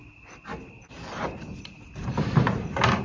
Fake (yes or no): no